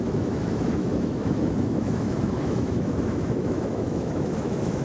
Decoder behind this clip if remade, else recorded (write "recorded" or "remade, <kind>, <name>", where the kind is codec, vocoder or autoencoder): remade, autoencoder, DAC-VAE